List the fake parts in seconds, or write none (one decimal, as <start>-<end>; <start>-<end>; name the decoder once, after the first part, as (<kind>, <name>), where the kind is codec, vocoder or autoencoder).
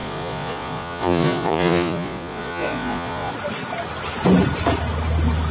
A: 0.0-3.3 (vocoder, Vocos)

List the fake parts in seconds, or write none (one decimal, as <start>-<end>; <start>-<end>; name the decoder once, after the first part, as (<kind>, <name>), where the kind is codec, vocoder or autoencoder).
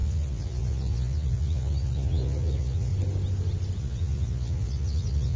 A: 0.0-2.9 (vocoder, Vocos); 3.8-5.4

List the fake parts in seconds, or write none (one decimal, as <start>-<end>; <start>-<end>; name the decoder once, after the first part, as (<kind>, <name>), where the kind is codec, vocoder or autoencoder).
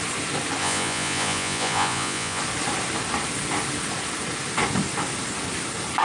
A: 0.6-2.4 (vocoder, Vocos)